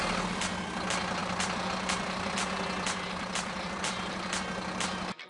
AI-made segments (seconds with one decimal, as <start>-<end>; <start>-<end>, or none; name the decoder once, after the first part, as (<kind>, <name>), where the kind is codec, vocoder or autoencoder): 1.2-4.4 (vocoder, BigVGAN v2)